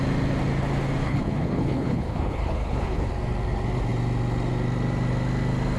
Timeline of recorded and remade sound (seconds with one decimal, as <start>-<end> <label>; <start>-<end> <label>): 0.0-1.0 recorded; 1.0-3.1 remade; 3.1-5.8 recorded